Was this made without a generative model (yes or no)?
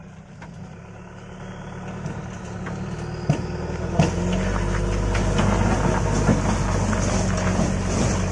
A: yes